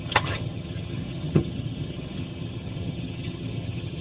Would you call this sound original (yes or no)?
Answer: no